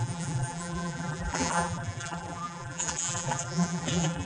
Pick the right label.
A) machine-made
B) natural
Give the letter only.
A